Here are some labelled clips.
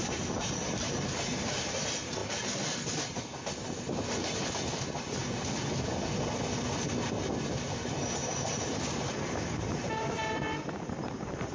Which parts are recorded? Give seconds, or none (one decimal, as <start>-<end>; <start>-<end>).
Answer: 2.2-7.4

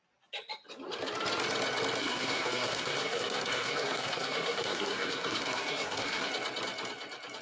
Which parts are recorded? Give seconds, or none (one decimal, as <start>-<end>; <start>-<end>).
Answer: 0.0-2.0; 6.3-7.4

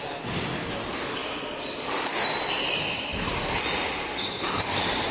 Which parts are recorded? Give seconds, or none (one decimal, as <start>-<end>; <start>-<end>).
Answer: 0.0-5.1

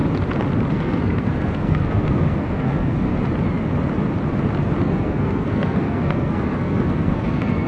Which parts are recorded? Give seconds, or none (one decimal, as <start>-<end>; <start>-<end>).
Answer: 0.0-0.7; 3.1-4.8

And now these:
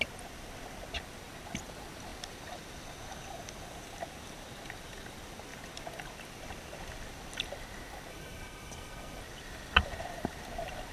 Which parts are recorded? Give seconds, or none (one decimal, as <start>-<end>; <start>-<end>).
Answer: 0.0-8.1; 9.2-10.9

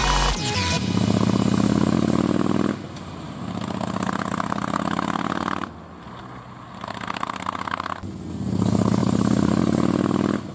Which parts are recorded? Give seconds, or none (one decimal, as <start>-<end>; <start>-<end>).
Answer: 0.0-9.0; 9.5-10.5

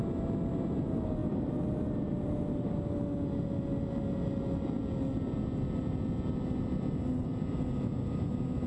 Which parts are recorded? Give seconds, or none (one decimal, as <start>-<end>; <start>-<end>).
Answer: 0.0-1.2; 2.1-8.7